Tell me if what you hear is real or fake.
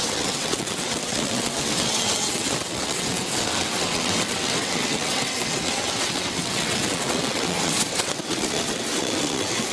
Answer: fake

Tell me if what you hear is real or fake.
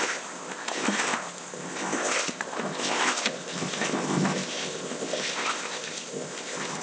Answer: fake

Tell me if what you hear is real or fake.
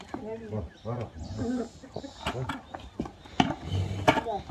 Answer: real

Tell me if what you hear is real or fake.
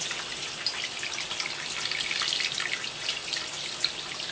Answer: real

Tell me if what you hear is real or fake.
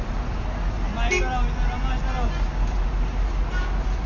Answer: real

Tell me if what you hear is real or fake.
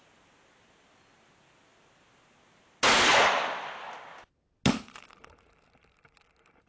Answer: real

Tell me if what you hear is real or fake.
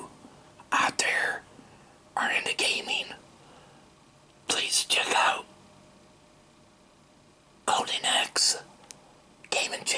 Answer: real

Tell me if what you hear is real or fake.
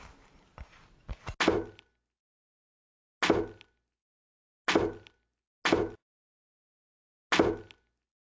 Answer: real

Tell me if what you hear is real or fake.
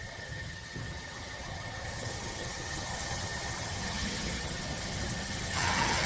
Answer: fake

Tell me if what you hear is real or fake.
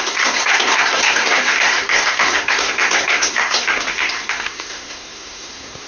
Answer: fake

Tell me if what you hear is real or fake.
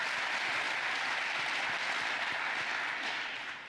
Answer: real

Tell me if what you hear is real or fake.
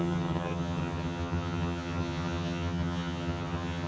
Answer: fake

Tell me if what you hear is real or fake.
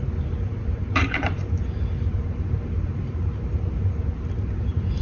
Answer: fake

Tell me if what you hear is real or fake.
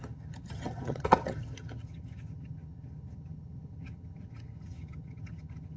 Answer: fake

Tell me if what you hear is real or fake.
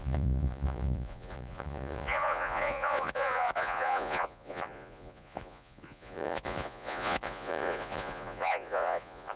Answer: fake